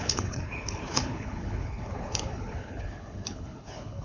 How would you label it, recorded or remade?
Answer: remade